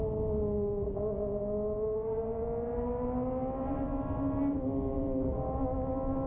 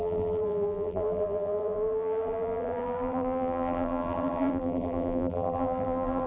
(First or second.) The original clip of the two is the first